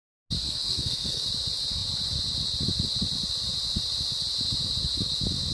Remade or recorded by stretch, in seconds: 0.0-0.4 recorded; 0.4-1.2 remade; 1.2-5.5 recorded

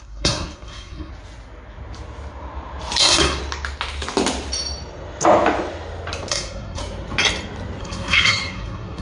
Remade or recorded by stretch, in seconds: 0.0-1.1 remade; 1.1-3.0 recorded; 3.0-3.4 remade; 3.4-6.3 recorded; 6.3-6.8 remade; 6.8-7.8 recorded; 7.8-9.0 remade

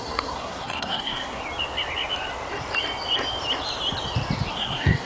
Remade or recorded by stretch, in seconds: 0.0-1.4 remade; 1.4-4.5 recorded; 4.5-5.1 remade

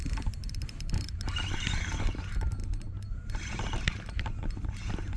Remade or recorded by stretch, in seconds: 0.0-2.6 recorded; 2.6-3.9 remade; 3.9-5.2 recorded